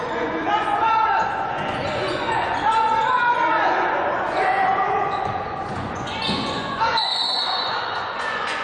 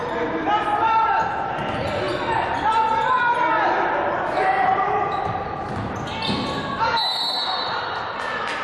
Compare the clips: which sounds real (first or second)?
second